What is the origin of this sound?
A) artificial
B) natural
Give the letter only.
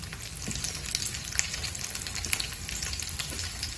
B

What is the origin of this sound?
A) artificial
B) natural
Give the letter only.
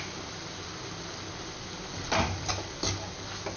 B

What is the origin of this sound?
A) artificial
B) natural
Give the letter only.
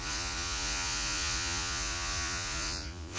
A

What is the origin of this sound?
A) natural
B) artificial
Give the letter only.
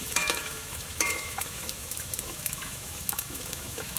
B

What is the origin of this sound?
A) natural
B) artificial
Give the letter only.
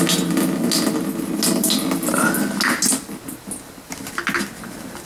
A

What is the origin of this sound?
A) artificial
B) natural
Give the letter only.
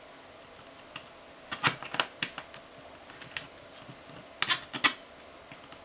B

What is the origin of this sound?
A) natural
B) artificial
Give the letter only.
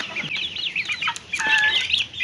A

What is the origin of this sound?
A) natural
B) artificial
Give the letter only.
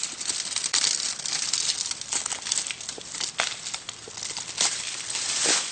A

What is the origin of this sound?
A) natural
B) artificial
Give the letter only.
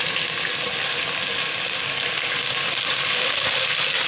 A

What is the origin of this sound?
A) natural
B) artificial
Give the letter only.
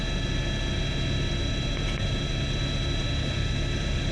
A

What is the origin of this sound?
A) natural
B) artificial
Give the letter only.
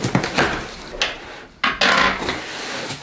A